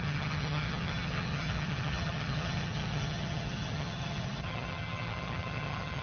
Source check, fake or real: fake